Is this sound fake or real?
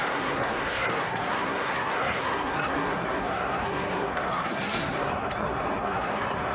fake